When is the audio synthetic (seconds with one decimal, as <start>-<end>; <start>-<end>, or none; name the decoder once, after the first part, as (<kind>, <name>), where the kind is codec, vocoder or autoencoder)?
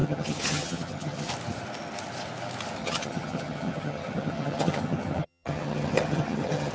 0.0-1.3 (vocoder, HiFi-GAN); 2.8-6.7